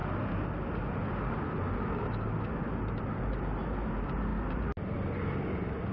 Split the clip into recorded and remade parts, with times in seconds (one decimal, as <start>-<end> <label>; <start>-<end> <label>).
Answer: 0.0-5.9 recorded